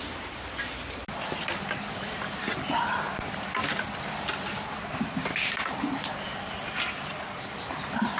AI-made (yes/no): no